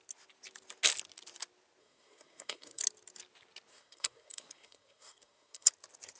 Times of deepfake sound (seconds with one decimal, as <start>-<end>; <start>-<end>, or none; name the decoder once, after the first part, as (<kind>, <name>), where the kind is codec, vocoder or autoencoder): 1.8-2.8 (codec, SNAC); 3.7-5.7